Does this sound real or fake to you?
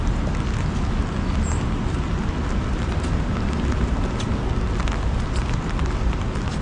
real